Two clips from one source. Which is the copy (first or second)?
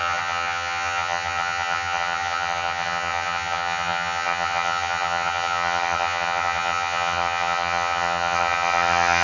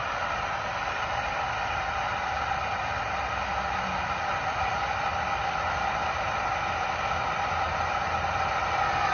first